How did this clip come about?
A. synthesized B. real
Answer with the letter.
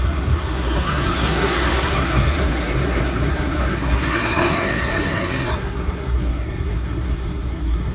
A